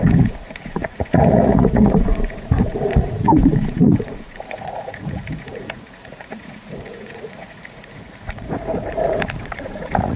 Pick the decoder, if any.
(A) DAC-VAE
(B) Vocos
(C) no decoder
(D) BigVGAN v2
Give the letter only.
B